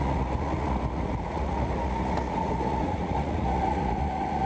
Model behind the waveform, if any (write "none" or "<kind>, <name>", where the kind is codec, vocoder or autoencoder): vocoder, Vocos